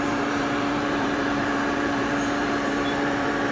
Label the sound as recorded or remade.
remade